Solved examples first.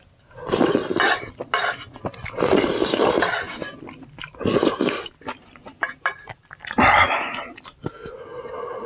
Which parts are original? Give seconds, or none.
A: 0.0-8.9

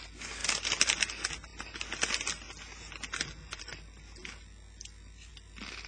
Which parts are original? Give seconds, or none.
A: 0.0-5.9

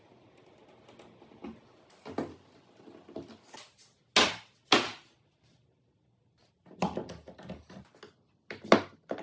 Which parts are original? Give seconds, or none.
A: 0.0-9.2

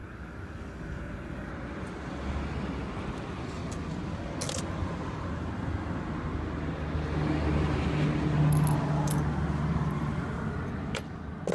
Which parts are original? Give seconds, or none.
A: 1.5-11.5

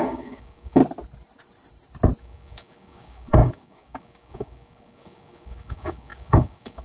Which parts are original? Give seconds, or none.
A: 0.8-2.2

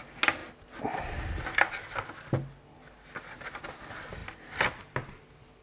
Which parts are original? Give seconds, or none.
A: 0.0-5.6